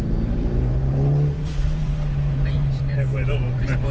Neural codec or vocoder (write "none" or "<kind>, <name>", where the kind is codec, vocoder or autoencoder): vocoder, BigVGAN v2